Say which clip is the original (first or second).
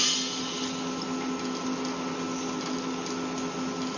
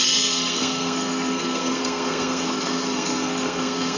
first